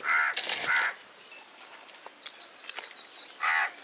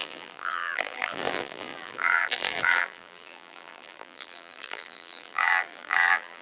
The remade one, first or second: second